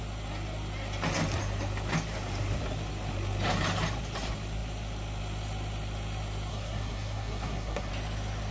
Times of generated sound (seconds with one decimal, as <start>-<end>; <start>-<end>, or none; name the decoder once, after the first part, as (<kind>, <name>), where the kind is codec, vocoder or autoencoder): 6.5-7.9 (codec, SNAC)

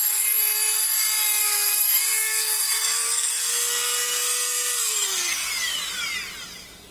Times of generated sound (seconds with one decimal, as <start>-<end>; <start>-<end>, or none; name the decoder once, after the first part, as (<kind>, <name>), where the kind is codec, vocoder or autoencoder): 1.4-5.5 (codec, SNAC)

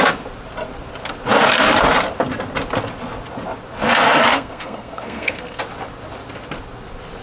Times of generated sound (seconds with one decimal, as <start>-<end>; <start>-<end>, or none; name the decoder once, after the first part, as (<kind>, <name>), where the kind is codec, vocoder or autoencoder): 4.3-5.6 (codec, SNAC)